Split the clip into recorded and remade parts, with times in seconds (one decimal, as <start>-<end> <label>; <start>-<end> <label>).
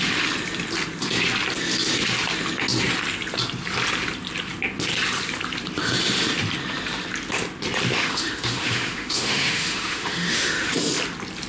0.0-7.9 recorded; 7.9-10.7 remade; 10.7-11.5 recorded